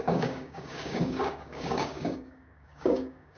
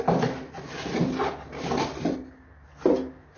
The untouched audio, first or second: second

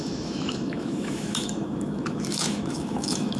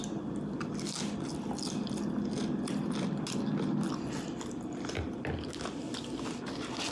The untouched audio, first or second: second